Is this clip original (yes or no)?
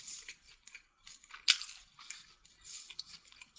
yes